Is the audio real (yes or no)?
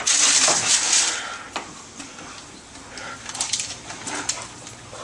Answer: yes